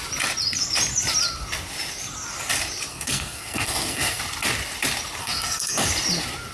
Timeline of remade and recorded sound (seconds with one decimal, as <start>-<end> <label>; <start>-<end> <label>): 0.0-2.9 recorded; 2.9-4.2 remade; 4.2-5.2 recorded; 5.2-5.9 remade; 5.9-6.5 recorded